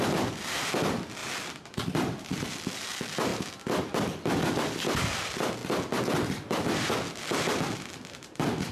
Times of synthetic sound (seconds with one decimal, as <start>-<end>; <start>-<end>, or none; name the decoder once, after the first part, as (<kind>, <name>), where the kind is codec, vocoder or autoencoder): 0.0-3.3 (vocoder, BigVGAN v2); 3.8-5.6; 6.5-8.7